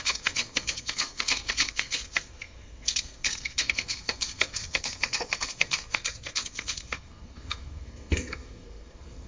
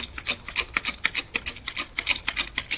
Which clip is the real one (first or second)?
second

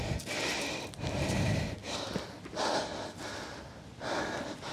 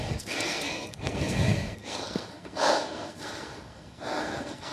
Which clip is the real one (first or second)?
first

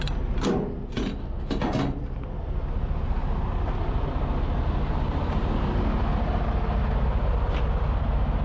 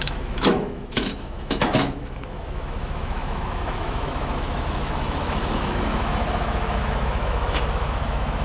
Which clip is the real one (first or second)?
first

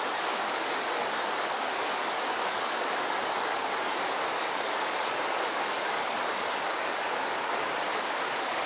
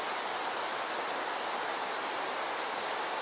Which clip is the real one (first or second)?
second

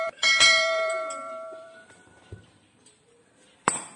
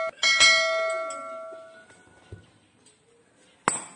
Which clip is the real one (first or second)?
second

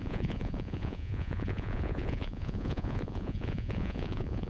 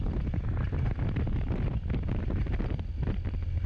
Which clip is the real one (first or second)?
second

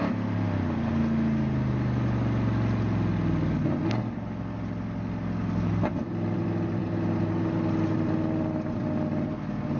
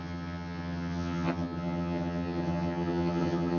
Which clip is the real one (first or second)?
first